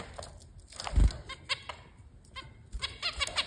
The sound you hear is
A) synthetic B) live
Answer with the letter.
B